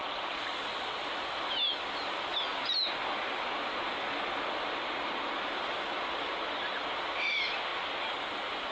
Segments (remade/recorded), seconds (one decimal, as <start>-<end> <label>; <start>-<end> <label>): 0.0-0.6 remade; 0.6-2.3 recorded; 2.3-6.9 remade; 6.9-8.7 recorded

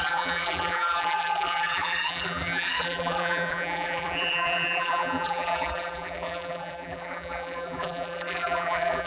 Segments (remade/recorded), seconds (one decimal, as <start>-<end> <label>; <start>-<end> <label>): 0.0-9.1 remade

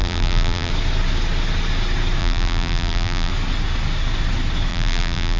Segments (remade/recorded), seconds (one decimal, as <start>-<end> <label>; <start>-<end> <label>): 0.0-0.7 remade; 0.7-2.2 recorded; 2.2-3.3 remade; 3.3-4.7 recorded; 4.7-5.4 remade